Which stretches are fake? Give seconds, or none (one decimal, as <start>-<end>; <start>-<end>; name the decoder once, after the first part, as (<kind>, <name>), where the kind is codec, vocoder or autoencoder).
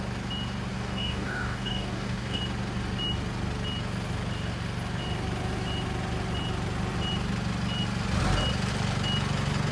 0.7-2.4 (codec, DAC)